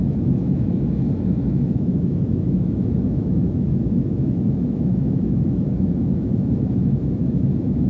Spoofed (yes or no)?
yes